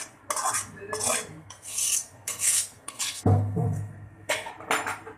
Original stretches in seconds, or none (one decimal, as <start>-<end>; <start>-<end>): 0.0-1.4; 4.5-5.2